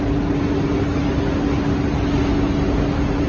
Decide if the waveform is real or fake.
real